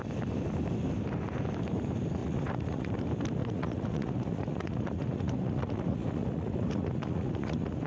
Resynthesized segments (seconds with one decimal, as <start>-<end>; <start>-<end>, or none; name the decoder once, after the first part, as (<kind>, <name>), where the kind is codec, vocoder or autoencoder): 2.2-2.9 (vocoder, Vocos); 3.4-7.9